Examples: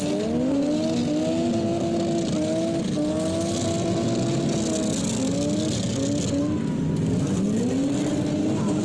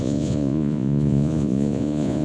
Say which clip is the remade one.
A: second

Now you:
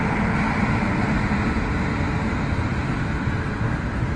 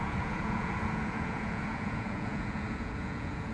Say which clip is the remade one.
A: second